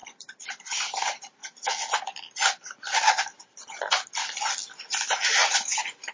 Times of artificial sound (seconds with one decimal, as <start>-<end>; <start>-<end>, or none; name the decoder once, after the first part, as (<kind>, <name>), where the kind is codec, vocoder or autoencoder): 0.0-1.4 (vocoder, BigVGAN v2); 5.1-6.1